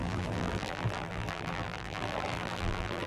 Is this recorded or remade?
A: remade